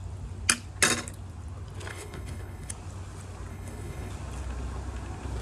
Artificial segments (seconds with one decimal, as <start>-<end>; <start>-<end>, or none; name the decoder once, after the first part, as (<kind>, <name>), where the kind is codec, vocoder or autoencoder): 1.9-2.7 (codec, HILCodec); 3.5-4.1